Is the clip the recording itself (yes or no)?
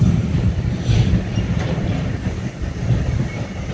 yes